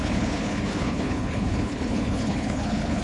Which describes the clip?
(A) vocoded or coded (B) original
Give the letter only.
A